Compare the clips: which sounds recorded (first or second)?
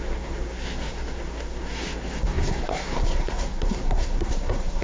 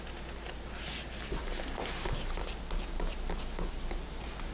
second